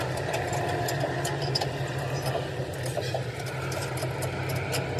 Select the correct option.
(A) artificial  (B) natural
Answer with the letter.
B